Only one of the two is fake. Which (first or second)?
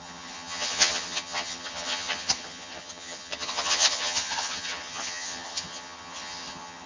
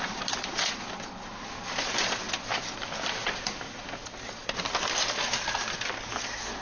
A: first